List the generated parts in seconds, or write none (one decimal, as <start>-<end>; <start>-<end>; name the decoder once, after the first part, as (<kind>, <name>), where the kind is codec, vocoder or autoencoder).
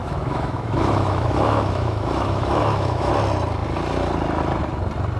0.0-3.1 (autoencoder, DAC-VAE)